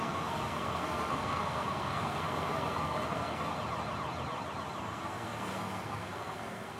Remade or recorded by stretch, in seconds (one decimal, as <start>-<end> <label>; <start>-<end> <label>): 0.0-3.5 remade; 3.5-4.8 recorded; 4.8-6.8 remade